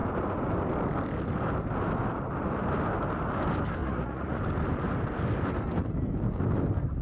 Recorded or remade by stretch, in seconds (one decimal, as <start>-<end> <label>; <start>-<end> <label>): 0.0-3.8 recorded; 3.8-4.4 remade; 4.4-7.0 recorded